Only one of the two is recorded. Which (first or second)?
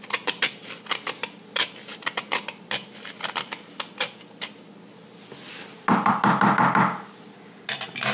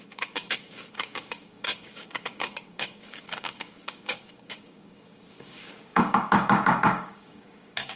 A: first